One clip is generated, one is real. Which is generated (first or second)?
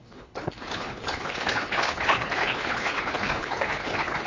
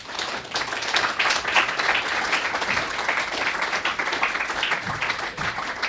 first